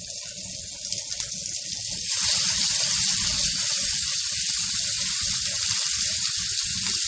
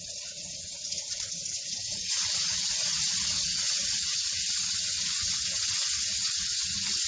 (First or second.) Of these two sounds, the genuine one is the first